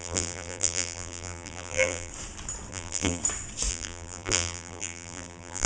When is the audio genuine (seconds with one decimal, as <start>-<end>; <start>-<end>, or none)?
2.1-2.7; 3.2-3.7